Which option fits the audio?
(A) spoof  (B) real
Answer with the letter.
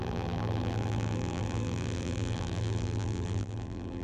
A